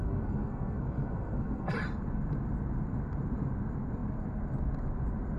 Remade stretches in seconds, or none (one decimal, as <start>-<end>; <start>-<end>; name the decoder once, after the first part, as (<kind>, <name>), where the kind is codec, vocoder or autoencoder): 0.0-1.7 (codec, SNAC)